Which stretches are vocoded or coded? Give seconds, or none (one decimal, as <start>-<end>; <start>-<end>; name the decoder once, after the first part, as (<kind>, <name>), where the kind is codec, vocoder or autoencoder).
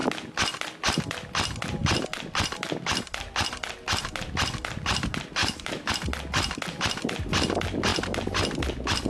5.4-5.9 (autoencoder, DAC-VAE)